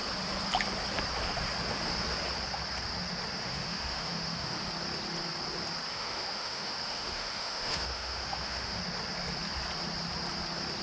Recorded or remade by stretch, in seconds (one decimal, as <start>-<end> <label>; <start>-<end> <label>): 0.0-3.4 recorded; 3.4-4.7 remade; 4.7-5.9 recorded; 5.9-8.8 remade; 8.8-10.8 recorded